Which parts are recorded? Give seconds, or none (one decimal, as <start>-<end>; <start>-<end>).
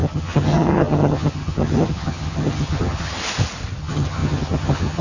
3.2-3.8